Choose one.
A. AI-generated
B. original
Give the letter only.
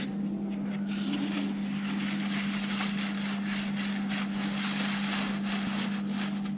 B